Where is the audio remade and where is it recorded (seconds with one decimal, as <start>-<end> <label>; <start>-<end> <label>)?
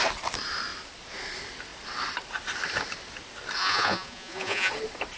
0.0-3.6 recorded; 3.6-4.7 remade; 4.7-5.2 recorded